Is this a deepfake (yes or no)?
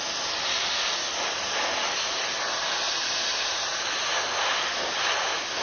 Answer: no